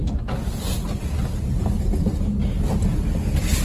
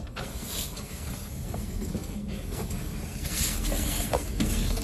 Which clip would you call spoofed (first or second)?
second